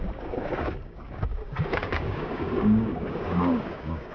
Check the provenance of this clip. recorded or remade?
remade